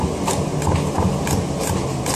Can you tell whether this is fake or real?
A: real